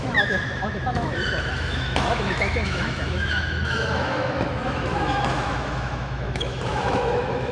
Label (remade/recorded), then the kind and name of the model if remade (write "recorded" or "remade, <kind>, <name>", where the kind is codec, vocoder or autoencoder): remade, autoencoder, DAC-VAE